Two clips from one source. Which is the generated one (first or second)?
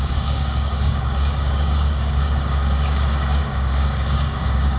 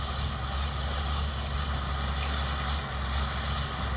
first